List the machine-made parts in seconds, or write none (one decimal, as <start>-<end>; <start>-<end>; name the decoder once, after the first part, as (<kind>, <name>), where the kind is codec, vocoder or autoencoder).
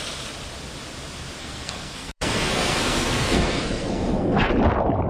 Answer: 1.4-4.5 (codec, SNAC)